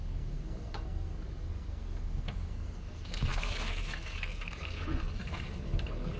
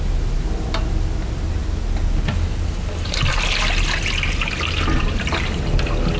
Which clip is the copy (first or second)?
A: first